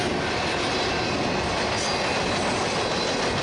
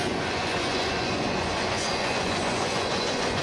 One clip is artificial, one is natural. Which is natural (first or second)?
first